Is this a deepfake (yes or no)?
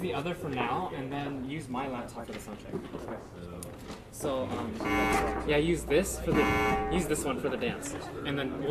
no